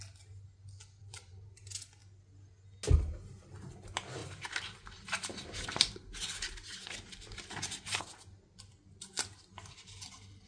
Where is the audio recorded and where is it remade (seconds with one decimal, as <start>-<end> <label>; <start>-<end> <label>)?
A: 0.0-1.0 recorded; 1.0-1.6 remade; 1.6-4.2 recorded; 4.2-8.0 remade; 8.0-10.5 recorded

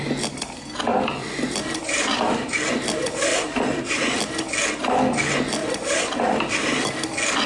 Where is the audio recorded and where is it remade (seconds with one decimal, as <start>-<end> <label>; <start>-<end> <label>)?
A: 0.0-1.6 recorded; 1.6-2.5 remade; 2.5-3.3 recorded; 3.3-4.0 remade; 4.0-5.6 recorded; 5.6-6.5 remade; 6.5-7.5 recorded